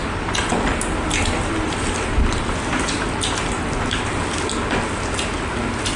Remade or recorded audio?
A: recorded